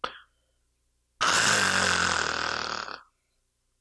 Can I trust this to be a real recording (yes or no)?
yes